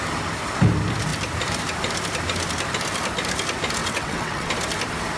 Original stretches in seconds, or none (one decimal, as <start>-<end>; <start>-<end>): 0.0-3.8; 4.5-5.2